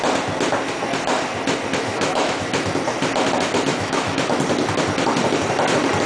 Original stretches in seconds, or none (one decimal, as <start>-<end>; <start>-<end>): 0.0-1.9; 2.5-3.7; 4.4-6.1